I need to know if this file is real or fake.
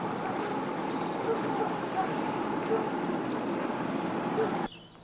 real